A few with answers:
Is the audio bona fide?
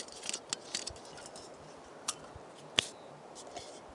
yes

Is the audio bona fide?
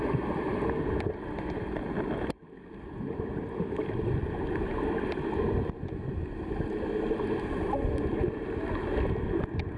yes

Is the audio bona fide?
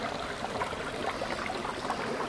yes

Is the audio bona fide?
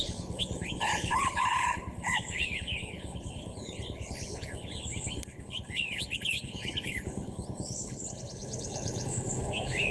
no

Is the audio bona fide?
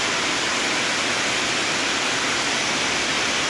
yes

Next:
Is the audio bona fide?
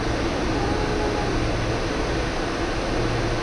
yes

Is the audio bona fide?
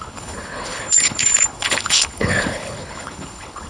no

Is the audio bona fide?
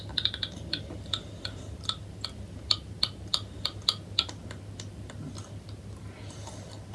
yes